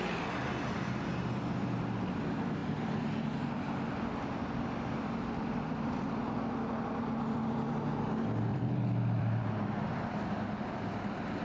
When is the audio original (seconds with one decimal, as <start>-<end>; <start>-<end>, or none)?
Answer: 0.0-5.4; 6.3-8.5; 9.4-11.4